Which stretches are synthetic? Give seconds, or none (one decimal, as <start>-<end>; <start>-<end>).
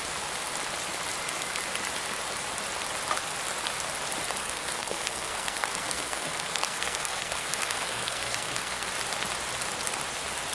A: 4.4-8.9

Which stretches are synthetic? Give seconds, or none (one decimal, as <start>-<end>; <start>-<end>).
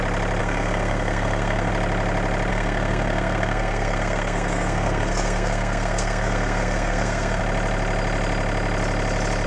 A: 0.4-1.7; 2.5-7.4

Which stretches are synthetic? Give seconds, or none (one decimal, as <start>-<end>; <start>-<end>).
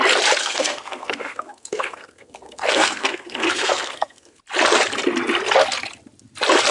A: 0.4-4.4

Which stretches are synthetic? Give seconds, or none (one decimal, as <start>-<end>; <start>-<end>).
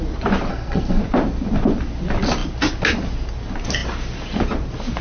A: 0.5-1.0